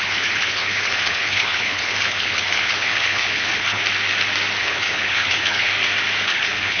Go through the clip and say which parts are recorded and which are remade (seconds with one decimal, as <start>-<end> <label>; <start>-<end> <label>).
0.0-3.8 remade; 3.8-4.6 recorded; 4.6-5.7 remade; 5.7-6.2 recorded; 6.2-6.8 remade